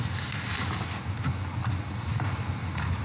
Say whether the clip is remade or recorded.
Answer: recorded